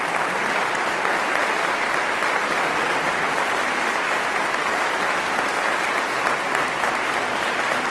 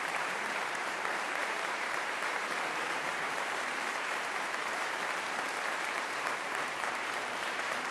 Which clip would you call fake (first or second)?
second